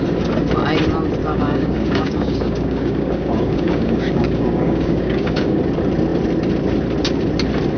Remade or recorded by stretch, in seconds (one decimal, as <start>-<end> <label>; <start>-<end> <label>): 0.0-1.2 recorded; 1.2-5.6 remade; 5.6-7.8 recorded